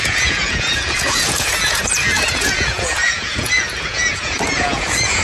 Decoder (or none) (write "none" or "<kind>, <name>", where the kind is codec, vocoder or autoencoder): vocoder, Vocos